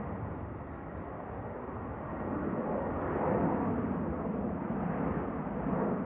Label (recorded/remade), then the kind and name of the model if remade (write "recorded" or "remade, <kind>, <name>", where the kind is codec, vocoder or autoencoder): recorded